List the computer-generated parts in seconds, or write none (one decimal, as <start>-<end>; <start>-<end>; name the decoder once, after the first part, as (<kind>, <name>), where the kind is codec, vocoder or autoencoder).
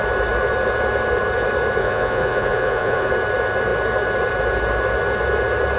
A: 1.8-3.1 (vocoder, Vocos)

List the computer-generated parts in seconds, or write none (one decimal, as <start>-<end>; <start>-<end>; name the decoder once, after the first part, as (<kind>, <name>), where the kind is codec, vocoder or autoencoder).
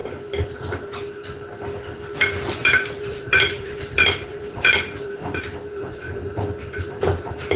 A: 0.0-0.9 (vocoder, BigVGAN v2); 2.6-7.6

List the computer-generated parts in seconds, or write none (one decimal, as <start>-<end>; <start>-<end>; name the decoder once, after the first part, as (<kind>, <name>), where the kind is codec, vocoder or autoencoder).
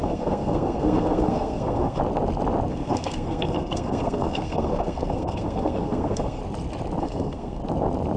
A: 0.0-2.0 (codec, SNAC); 2.7-6.4; 7.0-7.6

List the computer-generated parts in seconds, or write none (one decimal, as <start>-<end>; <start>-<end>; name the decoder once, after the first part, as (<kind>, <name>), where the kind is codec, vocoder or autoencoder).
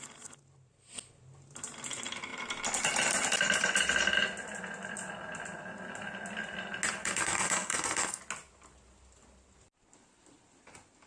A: 7.0-8.2 (codec, SNAC)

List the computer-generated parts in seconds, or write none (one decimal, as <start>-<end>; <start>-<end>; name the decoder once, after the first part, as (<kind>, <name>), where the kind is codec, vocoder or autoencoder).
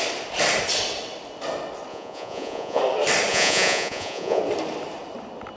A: 1.9-2.8 (vocoder, Vocos); 3.3-4.4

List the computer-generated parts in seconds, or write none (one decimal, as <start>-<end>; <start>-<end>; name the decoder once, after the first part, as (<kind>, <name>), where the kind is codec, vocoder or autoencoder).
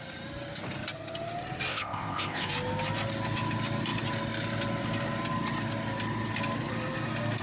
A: 1.7-2.5 (codec, ZipCodec)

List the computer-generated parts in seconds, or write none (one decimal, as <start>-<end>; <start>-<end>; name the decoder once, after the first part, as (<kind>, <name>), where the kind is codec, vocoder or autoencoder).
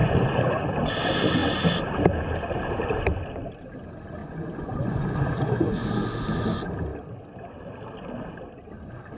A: 0.0-0.7 (vocoder, Vocos); 4.2-5.8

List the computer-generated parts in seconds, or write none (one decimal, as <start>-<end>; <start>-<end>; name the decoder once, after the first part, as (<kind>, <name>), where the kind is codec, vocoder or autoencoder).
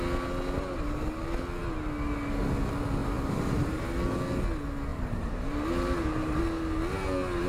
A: 3.0-3.8 (vocoder, BigVGAN v2); 4.9-6.4